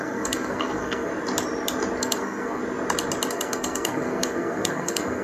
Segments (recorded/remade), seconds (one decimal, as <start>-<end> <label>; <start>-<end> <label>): 0.0-1.1 remade; 1.1-2.0 recorded; 2.0-2.6 remade; 2.6-3.3 recorded; 3.3-5.2 remade